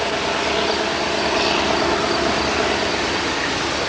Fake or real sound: real